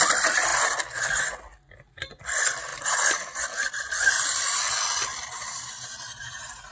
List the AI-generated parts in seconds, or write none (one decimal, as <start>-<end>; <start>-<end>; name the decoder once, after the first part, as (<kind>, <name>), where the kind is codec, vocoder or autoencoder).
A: 5.1-6.7 (vocoder, BigVGAN v2)